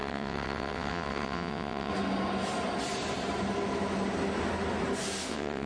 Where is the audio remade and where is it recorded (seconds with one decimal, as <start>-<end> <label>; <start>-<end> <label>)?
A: 0.0-1.9 remade; 1.9-5.3 recorded; 5.3-5.7 remade